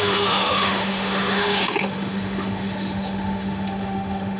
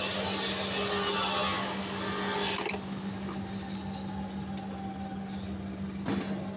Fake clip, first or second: first